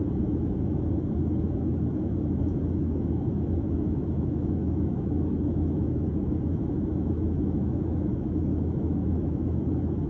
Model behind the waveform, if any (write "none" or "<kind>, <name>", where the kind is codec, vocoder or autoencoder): autoencoder, DAC-VAE